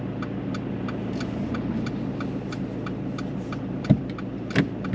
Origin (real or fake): real